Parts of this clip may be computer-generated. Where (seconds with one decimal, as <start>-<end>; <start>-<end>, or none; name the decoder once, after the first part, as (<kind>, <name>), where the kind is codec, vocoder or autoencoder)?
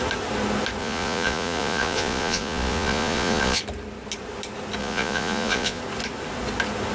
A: 0.8-3.6 (vocoder, Vocos); 4.8-5.8